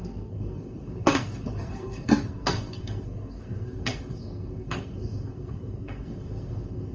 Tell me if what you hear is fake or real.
fake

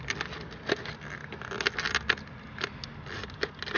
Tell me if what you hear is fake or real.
real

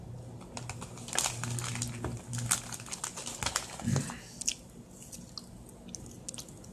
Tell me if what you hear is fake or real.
real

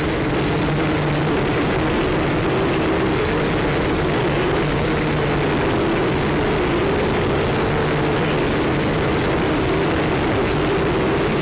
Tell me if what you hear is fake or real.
real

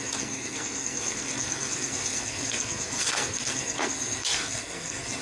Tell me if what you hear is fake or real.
fake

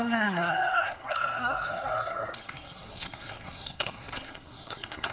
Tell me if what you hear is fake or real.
fake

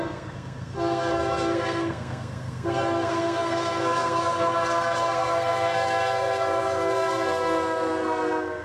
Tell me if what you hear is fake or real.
fake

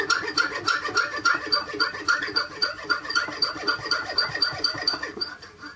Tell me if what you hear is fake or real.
real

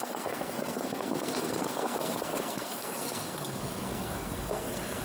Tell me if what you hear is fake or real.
fake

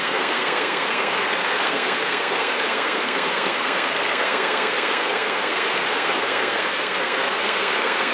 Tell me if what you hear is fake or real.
fake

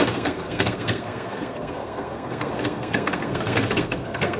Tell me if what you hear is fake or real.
fake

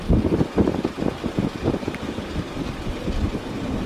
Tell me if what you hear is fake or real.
real